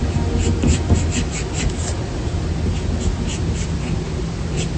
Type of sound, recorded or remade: recorded